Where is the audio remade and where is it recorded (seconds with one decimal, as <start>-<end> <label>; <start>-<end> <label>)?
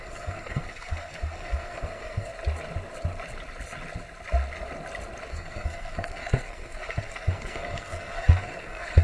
0.0-2.3 remade; 2.3-5.3 recorded; 5.3-9.0 remade